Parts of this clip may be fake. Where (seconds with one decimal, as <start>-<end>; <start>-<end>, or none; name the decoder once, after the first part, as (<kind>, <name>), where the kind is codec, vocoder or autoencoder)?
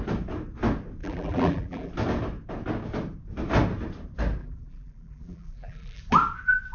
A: 1.0-1.9 (vocoder, BigVGAN v2); 4.4-6.0